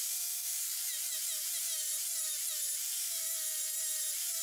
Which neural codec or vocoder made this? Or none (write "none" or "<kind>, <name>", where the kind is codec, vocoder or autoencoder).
vocoder, BigVGAN v2